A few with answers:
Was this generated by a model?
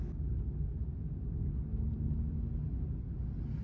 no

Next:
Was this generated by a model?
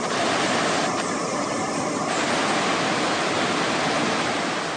no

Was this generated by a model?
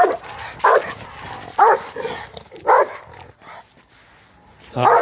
no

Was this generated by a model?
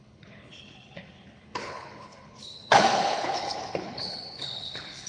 yes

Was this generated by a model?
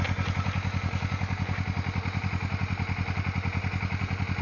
no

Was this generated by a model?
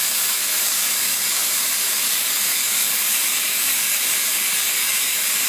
yes